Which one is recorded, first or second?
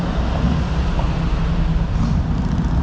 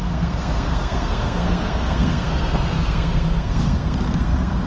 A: first